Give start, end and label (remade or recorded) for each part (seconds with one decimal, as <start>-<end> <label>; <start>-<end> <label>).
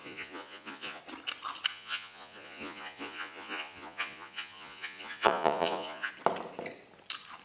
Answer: 0.0-1.0 remade; 1.0-1.7 recorded; 1.7-6.1 remade; 6.1-7.4 recorded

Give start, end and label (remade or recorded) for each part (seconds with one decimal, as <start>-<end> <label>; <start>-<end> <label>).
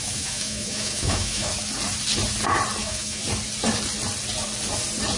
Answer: 0.0-1.5 remade; 1.5-2.8 recorded; 2.8-3.2 remade; 3.2-5.2 recorded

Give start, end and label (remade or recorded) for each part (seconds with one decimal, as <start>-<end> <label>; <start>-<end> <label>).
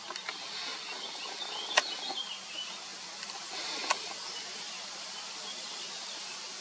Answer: 0.0-6.6 recorded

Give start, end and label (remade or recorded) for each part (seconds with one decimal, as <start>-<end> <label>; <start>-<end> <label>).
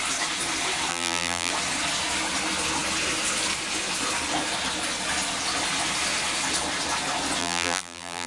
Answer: 0.0-0.9 recorded; 0.9-1.5 remade; 1.5-7.4 recorded; 7.4-8.3 remade